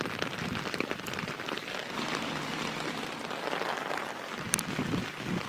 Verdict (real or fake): fake